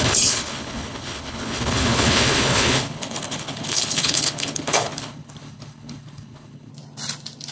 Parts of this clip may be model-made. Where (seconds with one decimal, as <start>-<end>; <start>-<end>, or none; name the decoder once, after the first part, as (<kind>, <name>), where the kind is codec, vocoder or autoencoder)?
0.0-6.7 (codec, HILCodec)